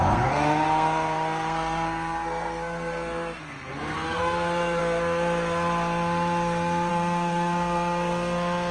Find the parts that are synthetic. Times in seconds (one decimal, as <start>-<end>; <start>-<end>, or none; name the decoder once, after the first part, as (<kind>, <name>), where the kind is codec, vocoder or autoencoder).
0.0-4.8 (codec, SNAC); 6.9-8.7